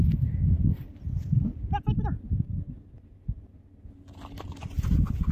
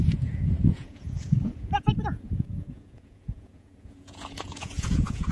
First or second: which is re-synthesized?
second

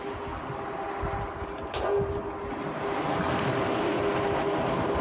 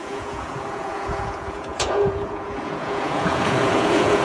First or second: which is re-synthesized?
second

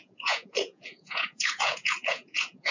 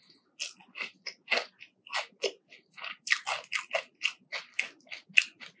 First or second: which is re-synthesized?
first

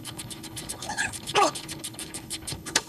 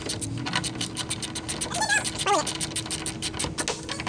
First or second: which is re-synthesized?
first